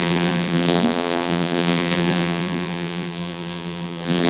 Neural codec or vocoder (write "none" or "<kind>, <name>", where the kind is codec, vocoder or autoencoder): vocoder, BigVGAN v2